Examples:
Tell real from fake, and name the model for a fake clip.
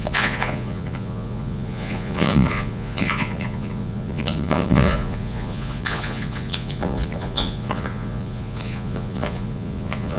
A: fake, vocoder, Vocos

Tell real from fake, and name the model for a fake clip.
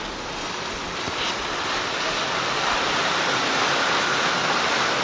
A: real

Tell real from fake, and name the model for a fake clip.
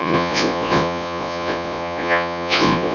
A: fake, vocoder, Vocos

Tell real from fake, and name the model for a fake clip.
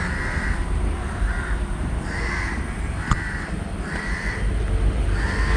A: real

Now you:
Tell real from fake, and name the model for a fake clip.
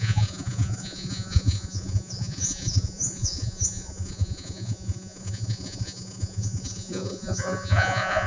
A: fake, vocoder, Vocos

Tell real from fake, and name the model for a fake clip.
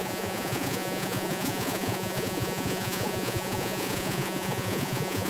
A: fake, vocoder, Vocos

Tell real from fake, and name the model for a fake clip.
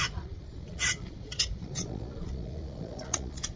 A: fake, vocoder, Vocos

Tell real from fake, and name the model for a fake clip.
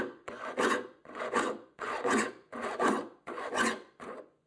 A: fake, vocoder, Vocos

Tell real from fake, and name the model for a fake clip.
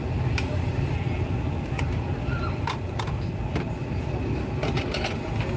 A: real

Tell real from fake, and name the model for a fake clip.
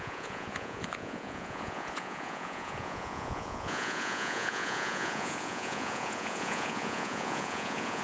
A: fake, vocoder, Vocos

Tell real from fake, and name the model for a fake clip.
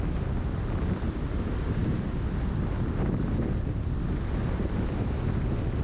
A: real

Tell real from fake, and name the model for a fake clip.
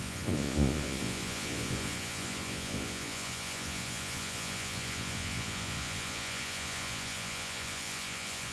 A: fake, vocoder, Vocos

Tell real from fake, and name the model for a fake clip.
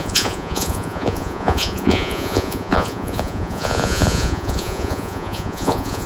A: fake, vocoder, Vocos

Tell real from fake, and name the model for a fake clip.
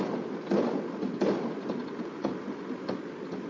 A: real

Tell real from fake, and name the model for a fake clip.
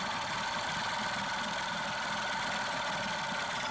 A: real